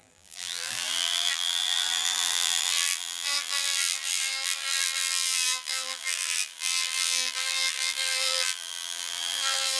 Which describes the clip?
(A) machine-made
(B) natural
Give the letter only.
A